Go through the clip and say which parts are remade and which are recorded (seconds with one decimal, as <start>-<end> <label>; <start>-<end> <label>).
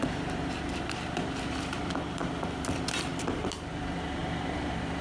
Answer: 0.0-0.7 recorded; 0.7-3.1 remade; 3.1-3.7 recorded; 3.7-4.2 remade; 4.2-5.0 recorded